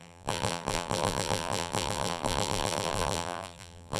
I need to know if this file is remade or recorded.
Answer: remade